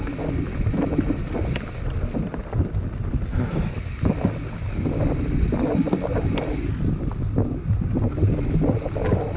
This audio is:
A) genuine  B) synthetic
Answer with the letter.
A